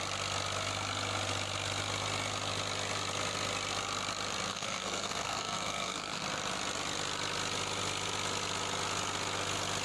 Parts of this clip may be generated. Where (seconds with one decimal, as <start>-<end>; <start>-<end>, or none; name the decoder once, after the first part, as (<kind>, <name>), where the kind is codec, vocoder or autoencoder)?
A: 4.5-6.2 (codec, SNAC)